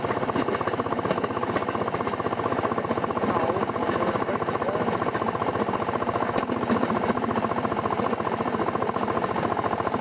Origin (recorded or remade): recorded